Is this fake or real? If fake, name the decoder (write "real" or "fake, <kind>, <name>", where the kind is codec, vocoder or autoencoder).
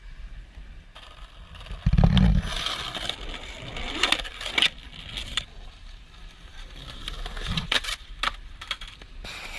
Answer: real